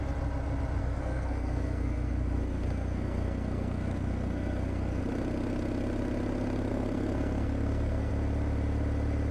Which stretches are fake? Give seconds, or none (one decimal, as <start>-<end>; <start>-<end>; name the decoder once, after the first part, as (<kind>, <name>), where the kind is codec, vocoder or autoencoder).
0.8-5.0 (codec, SNAC); 6.7-8.1